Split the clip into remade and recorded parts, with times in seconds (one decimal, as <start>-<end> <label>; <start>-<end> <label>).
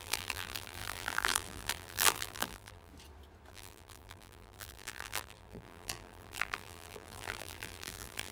0.0-2.9 remade; 2.9-3.5 recorded; 3.5-8.3 remade